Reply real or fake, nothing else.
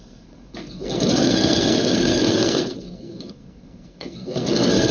fake